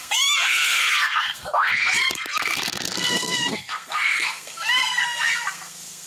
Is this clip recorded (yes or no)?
no